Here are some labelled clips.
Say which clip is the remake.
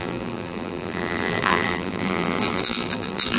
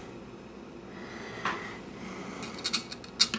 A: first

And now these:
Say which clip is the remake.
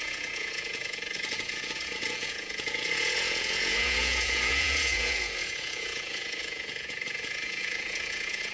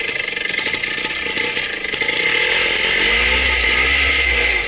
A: first